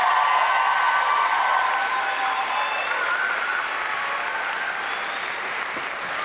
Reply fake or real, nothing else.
real